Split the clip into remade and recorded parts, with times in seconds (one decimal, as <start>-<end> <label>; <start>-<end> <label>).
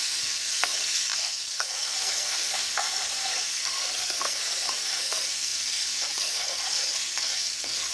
0.0-7.9 remade